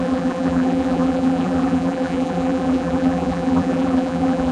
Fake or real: fake